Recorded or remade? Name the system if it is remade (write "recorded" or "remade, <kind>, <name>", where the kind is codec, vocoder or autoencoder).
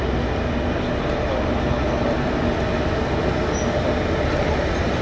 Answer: recorded